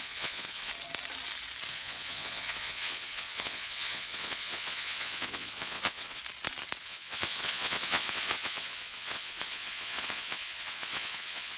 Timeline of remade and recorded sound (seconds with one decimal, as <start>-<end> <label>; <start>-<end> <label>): 0.0-0.7 remade; 0.7-1.7 recorded; 1.7-6.2 remade; 6.2-6.8 recorded; 6.8-11.6 remade